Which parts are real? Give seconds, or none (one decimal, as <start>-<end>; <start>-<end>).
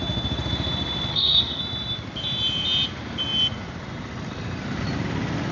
0.0-1.1; 1.6-5.5